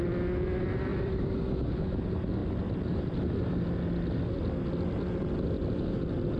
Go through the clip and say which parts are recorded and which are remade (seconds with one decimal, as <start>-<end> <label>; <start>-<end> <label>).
0.0-0.9 recorded; 0.9-1.7 remade; 1.7-6.4 recorded